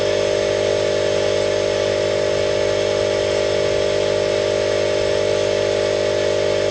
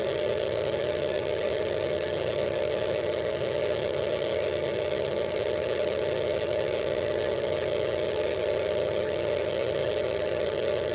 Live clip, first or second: first